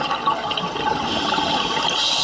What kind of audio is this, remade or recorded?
recorded